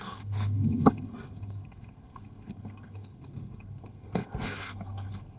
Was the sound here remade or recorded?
remade